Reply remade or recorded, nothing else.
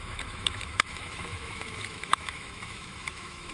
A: remade